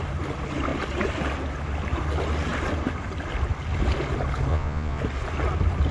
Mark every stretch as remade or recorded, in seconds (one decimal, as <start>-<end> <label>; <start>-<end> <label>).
0.0-4.5 recorded; 4.5-5.0 remade; 5.0-5.9 recorded